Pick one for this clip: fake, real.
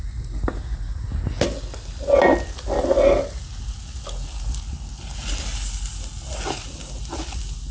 real